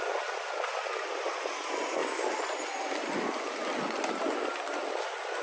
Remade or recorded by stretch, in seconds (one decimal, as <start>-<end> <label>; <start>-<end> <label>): 0.0-5.4 recorded